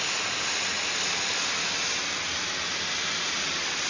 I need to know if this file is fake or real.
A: real